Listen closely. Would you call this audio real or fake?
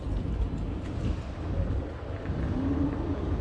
real